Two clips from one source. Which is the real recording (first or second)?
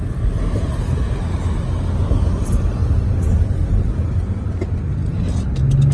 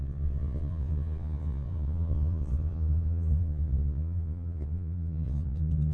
first